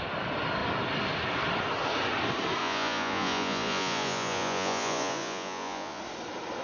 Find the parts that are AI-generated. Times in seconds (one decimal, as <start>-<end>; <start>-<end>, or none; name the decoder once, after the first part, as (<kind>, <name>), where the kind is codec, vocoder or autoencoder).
2.6-6.0 (vocoder, Vocos)